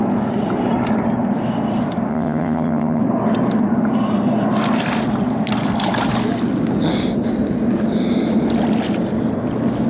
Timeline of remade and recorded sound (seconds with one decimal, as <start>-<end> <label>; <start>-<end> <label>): 0.0-2.1 recorded; 2.1-3.0 remade; 3.0-9.9 recorded